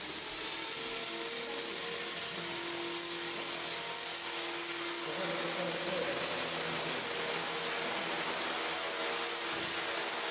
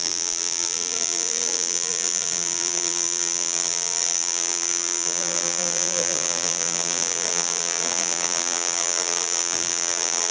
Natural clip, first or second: first